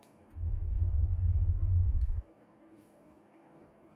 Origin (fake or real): fake